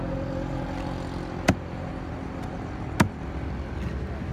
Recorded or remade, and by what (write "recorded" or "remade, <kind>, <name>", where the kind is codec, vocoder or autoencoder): recorded